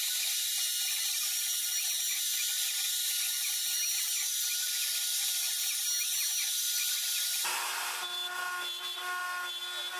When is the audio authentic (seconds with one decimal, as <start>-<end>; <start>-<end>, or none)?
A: 0.0-10.0